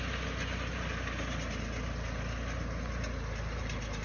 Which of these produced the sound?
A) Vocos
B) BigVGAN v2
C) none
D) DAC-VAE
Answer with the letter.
C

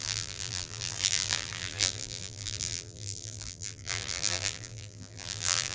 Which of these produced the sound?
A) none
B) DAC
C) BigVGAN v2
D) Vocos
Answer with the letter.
C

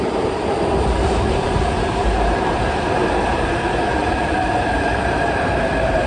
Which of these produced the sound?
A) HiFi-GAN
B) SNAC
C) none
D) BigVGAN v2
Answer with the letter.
D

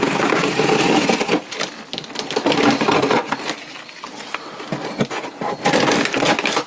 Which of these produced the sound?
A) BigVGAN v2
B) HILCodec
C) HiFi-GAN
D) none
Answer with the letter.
D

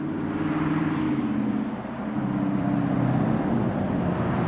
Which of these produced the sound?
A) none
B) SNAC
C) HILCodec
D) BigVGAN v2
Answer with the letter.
D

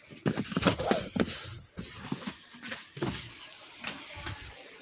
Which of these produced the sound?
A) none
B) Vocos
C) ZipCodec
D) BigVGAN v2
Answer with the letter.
A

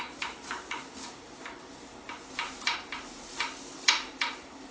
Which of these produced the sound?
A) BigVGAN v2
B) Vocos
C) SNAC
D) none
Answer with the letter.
A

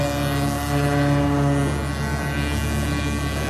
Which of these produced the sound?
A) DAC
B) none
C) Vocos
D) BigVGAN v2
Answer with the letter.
B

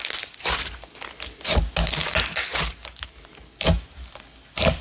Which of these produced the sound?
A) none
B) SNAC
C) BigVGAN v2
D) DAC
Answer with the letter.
A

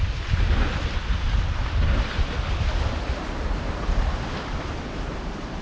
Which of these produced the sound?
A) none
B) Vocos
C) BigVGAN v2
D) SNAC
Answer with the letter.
C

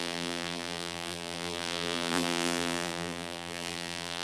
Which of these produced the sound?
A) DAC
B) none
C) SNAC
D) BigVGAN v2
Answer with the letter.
D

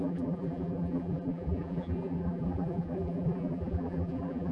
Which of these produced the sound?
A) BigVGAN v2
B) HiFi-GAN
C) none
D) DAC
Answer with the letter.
A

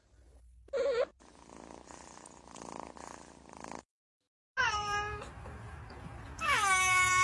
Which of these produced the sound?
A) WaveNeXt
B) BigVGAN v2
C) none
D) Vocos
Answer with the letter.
C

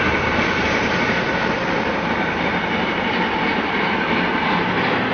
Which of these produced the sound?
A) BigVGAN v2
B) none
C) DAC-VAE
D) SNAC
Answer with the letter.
A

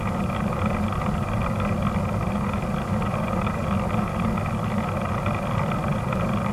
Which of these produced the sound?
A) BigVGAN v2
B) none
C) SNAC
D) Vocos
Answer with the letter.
B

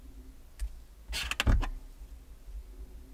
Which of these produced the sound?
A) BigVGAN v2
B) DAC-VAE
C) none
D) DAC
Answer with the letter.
C